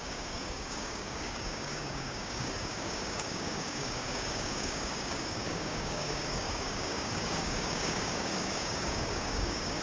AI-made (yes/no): yes